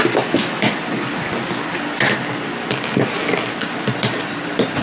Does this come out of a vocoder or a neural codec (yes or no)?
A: no